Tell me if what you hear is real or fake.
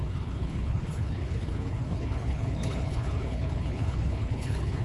fake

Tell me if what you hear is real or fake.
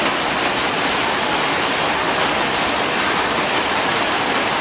real